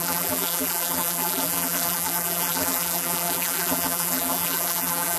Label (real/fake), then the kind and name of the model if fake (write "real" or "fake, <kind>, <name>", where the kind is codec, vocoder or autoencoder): fake, vocoder, BigVGAN v2